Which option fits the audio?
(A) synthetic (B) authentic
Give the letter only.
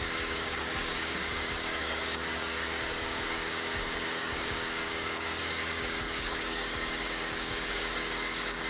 A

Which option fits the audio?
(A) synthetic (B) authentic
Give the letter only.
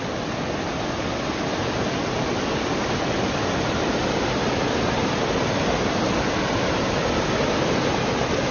B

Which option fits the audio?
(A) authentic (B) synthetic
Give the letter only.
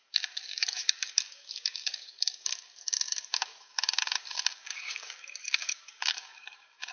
B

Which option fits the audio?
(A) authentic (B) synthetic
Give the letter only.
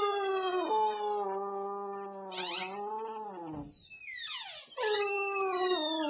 A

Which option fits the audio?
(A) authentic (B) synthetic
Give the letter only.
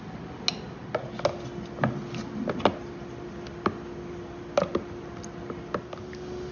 A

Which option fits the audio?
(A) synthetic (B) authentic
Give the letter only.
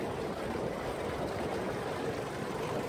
B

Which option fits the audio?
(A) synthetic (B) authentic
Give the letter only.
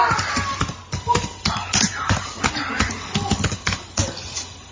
B